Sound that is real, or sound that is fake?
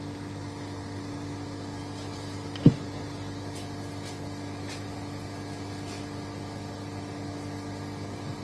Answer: real